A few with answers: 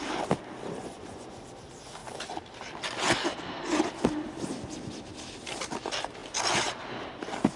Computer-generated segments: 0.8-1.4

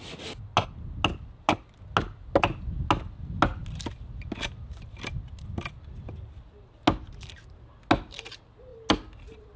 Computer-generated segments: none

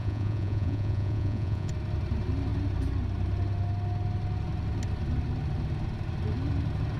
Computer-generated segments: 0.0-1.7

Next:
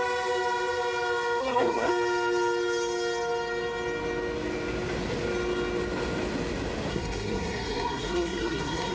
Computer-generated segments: 1.4-1.9; 6.9-8.9